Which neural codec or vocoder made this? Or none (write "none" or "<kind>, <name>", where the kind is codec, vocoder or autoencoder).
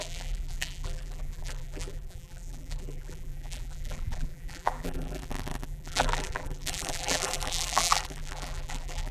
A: vocoder, BigVGAN v2